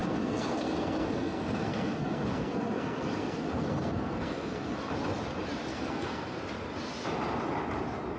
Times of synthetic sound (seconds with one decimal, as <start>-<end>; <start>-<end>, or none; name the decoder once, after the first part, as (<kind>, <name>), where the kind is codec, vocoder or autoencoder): 0.0-4.9 (codec, SNAC); 5.7-6.4